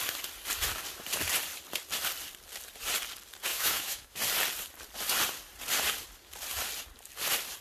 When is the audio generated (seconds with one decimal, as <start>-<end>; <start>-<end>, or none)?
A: 3.5-4.2